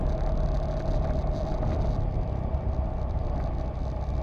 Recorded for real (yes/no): yes